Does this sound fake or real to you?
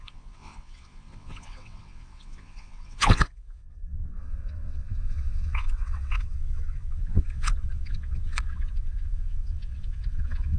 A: fake